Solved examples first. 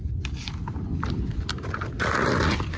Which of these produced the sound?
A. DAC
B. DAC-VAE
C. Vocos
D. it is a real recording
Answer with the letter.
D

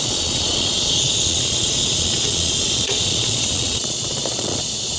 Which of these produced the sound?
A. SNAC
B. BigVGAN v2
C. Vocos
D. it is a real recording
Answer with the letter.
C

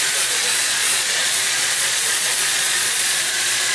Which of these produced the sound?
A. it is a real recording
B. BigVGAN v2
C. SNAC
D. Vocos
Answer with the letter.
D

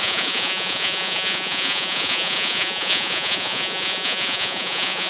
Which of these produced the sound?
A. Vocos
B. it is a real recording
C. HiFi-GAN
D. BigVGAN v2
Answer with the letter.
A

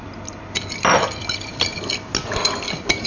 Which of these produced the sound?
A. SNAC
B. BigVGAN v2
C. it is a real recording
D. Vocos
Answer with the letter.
C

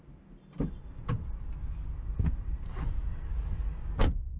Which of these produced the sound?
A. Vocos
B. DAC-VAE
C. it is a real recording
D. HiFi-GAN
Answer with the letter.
C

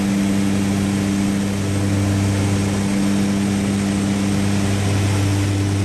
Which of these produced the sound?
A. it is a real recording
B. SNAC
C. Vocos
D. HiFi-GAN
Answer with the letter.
A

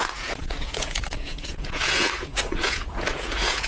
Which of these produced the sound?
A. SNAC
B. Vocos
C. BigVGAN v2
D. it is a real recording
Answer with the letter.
B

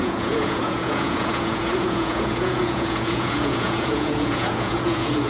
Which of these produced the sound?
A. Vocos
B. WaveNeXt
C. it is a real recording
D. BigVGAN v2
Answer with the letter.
A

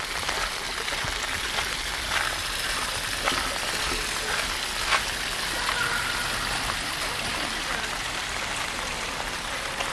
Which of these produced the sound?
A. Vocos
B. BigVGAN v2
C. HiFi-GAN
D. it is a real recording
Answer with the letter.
D